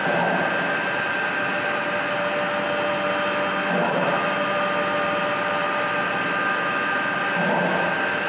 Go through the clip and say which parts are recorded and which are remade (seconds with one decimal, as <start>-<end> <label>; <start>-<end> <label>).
0.0-8.3 recorded

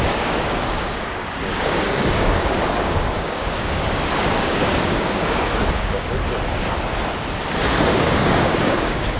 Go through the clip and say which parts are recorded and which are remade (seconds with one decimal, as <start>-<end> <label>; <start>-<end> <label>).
0.0-6.2 remade; 6.2-7.9 recorded; 7.9-9.2 remade

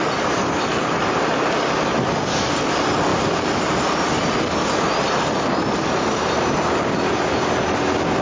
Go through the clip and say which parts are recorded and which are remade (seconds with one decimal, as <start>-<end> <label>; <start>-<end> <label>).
0.0-8.2 recorded

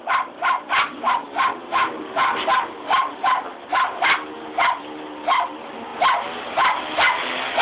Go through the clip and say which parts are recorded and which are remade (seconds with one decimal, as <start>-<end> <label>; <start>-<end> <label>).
0.0-7.6 recorded